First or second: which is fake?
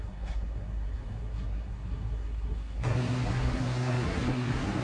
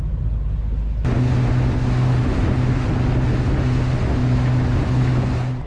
first